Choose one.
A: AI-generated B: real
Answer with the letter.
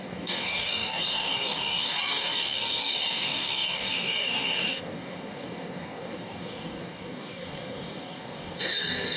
A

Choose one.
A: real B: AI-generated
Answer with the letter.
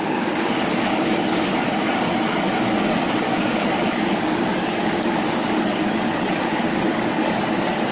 B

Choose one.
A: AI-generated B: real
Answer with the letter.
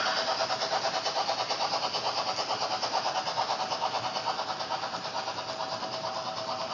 B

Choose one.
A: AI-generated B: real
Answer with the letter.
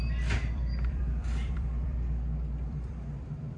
A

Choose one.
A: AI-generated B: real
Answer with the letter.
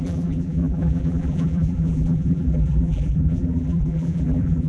A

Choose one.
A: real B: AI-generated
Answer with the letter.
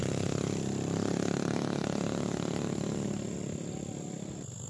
A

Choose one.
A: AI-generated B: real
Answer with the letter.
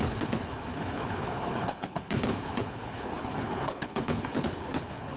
A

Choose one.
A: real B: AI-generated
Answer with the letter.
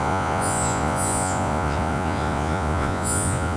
B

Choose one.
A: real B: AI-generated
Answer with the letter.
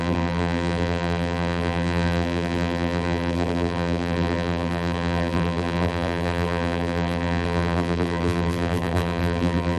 B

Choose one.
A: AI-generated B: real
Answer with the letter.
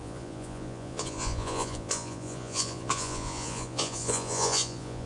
A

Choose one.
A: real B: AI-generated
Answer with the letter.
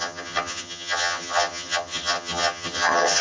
B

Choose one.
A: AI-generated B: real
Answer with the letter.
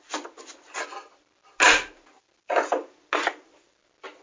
B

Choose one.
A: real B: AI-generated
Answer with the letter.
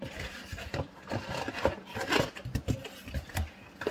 A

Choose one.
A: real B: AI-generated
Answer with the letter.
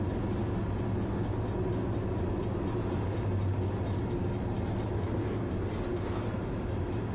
A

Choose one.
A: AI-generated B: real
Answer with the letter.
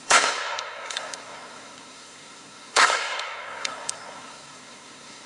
A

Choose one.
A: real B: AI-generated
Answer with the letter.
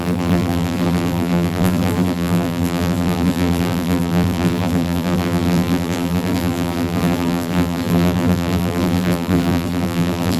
B